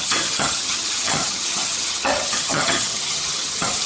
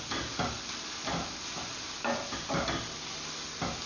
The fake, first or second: first